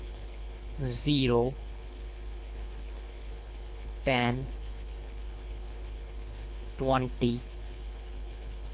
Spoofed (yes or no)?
yes